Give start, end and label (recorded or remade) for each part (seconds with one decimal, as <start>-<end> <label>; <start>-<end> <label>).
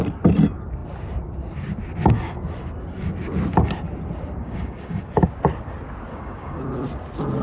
0.0-4.4 recorded; 4.4-5.0 remade; 5.0-6.1 recorded; 6.1-6.6 remade; 6.6-7.4 recorded